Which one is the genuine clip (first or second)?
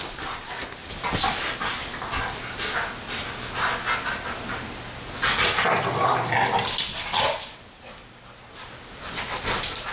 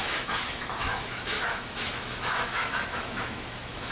first